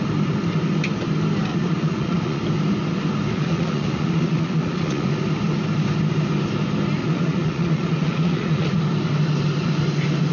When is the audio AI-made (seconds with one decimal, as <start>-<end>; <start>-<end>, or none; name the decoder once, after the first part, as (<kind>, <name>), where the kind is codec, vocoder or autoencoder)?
1.5-2.4 (vocoder, Vocos); 3.3-5.1; 7.0-8.8